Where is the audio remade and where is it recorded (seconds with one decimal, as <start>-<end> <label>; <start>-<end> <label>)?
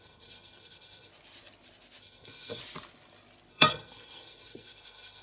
0.0-1.1 remade; 1.1-2.0 recorded; 2.0-2.6 remade; 2.6-3.5 recorded; 3.5-5.2 remade